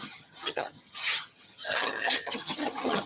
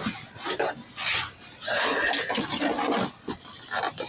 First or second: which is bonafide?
second